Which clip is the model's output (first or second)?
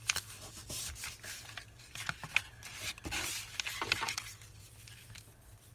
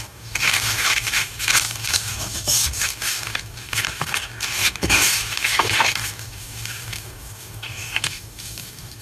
second